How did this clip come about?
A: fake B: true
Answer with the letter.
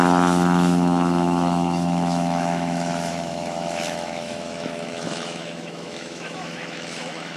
A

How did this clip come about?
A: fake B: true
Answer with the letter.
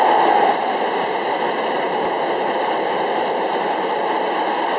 B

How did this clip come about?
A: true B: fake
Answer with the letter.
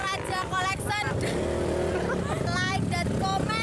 A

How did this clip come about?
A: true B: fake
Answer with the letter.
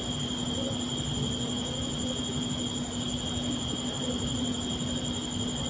A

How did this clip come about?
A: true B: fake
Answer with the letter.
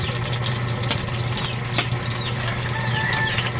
A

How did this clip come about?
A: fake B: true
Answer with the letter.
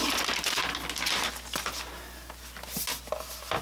B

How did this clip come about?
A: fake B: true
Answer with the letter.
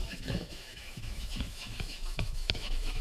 A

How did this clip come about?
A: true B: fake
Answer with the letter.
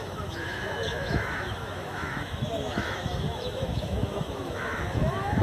B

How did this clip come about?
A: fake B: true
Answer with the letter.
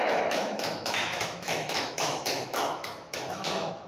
A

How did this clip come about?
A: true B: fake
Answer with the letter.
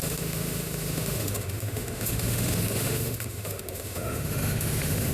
B